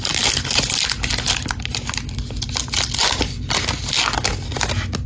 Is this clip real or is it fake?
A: real